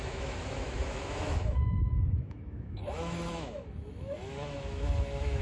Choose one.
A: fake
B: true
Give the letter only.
A